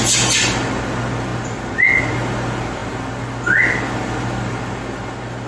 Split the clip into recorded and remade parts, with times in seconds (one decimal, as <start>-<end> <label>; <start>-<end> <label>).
0.0-5.5 recorded